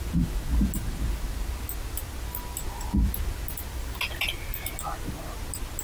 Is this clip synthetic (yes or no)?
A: no